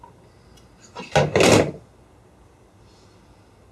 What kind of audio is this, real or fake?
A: real